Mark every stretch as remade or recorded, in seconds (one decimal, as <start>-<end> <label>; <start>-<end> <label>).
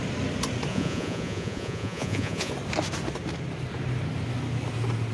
0.0-0.7 recorded; 0.7-2.5 remade; 2.5-5.1 recorded